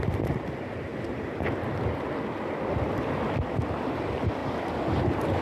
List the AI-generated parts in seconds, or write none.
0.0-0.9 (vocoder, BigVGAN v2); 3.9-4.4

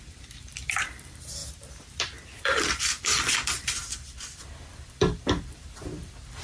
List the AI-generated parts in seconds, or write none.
0.0-1.4 (vocoder, BigVGAN v2); 2.4-6.4

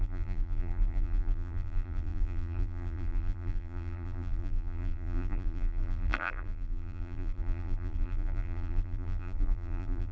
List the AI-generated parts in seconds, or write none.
0.0-10.1 (vocoder, BigVGAN v2)